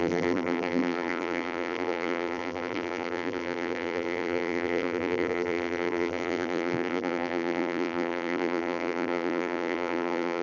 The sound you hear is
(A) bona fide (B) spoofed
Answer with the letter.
B